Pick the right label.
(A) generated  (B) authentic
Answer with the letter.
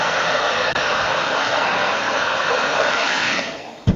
A